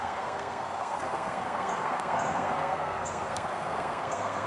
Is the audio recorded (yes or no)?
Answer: no